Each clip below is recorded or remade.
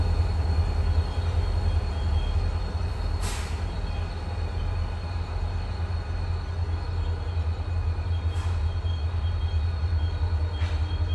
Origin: recorded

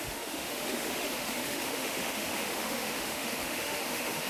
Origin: remade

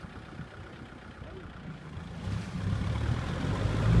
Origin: recorded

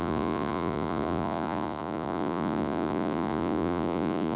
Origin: remade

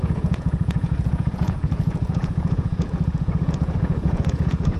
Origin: remade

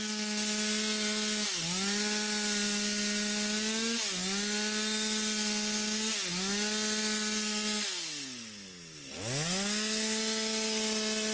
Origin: recorded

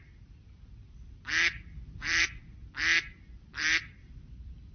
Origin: remade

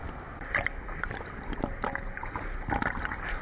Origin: recorded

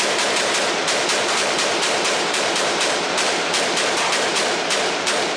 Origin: remade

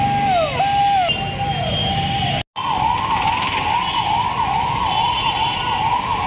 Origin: recorded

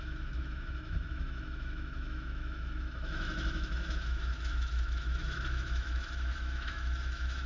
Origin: remade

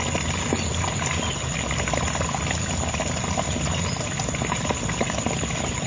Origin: recorded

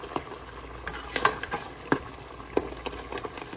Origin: recorded